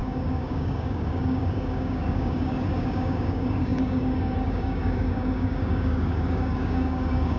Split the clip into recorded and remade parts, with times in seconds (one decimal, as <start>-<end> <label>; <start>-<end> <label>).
0.0-7.4 remade